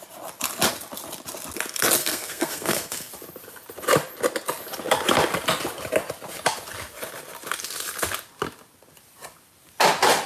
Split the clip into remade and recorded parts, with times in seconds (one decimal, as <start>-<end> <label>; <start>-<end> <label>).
0.0-2.0 recorded; 2.0-3.1 remade; 3.1-10.3 recorded